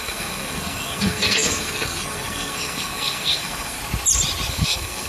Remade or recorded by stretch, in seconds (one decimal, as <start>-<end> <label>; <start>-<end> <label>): 0.0-3.8 remade; 3.8-4.5 recorded; 4.5-5.1 remade